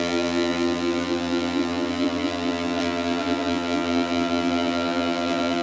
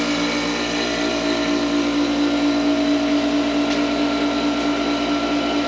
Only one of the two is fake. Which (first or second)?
first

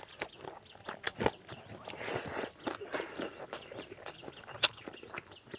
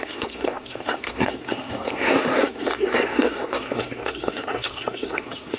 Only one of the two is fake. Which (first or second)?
second